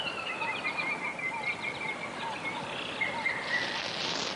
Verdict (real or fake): real